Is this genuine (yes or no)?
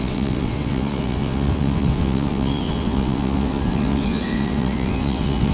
no